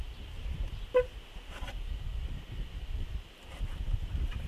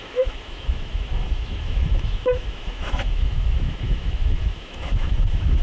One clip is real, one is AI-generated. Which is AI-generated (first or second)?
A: second